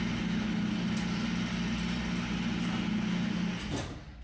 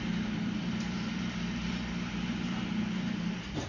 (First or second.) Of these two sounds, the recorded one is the first